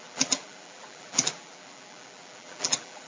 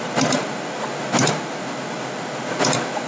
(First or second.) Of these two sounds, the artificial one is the first